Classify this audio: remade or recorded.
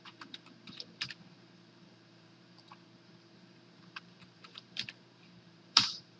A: remade